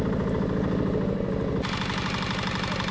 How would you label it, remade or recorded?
recorded